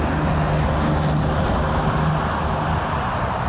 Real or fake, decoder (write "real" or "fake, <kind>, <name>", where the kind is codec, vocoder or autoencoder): real